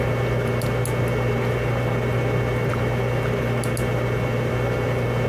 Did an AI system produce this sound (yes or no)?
no